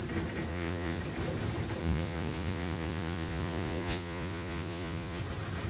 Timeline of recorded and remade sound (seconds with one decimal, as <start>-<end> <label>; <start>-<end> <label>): 0.0-0.5 recorded; 0.5-1.0 remade; 1.0-1.8 recorded; 1.8-5.2 remade; 5.2-5.7 recorded